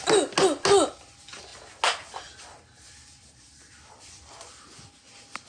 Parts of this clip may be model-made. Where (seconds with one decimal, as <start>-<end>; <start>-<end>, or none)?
none